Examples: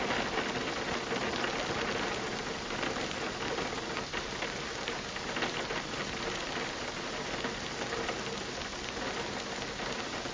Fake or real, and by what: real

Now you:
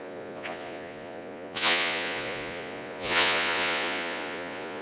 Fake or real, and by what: fake, vocoder, Vocos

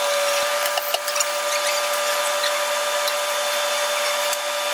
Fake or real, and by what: real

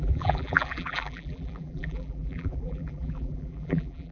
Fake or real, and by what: fake, vocoder, BigVGAN v2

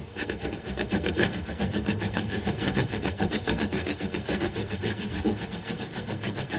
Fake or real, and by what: fake, codec, SNAC